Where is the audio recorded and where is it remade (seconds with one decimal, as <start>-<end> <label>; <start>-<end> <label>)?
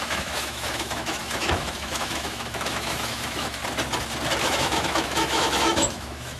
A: 0.0-3.6 remade; 3.6-4.4 recorded; 4.4-6.4 remade